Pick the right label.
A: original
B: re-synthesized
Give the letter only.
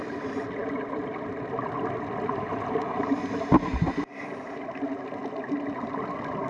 A